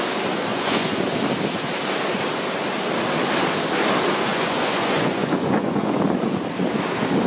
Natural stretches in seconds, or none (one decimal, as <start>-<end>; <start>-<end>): 0.0-0.5; 1.0-4.3; 6.0-7.3